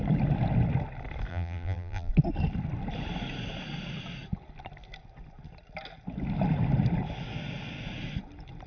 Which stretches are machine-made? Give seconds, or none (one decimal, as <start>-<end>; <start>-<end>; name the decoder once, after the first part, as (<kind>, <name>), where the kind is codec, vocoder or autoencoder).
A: 1.3-2.1 (vocoder, BigVGAN v2)